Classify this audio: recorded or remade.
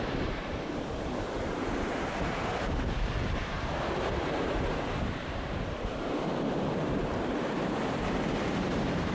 remade